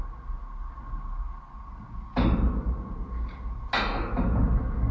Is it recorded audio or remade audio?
recorded